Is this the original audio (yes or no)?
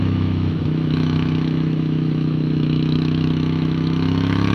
no